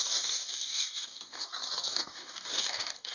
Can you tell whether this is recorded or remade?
remade